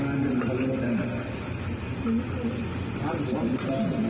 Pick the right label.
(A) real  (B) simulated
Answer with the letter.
A